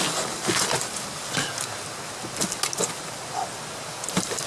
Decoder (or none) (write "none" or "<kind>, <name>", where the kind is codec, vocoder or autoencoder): none